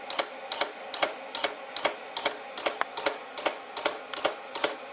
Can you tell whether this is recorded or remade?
recorded